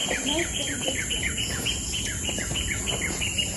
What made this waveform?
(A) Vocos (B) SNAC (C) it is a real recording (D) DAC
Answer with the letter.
C